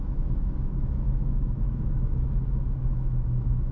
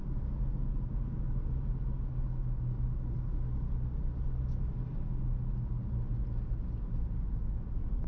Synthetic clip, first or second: first